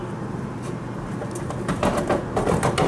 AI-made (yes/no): no